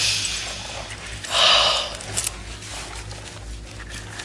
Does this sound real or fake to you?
real